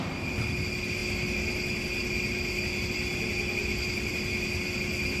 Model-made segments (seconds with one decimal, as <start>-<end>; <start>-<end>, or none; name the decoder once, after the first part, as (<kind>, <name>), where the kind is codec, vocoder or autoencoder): none